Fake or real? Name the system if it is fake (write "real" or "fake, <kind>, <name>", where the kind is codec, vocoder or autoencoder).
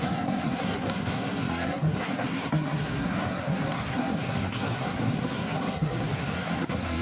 fake, codec, SNAC